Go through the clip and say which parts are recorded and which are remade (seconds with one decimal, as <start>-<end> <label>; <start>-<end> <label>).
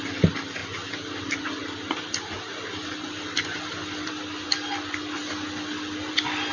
0.0-6.5 recorded